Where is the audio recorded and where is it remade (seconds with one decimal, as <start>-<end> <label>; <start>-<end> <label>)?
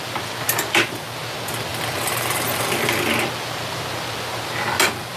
0.0-5.2 recorded